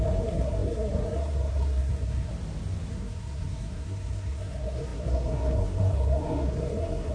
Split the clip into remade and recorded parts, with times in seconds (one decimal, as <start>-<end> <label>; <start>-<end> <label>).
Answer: 0.0-2.3 remade; 2.3-2.9 recorded; 2.9-7.1 remade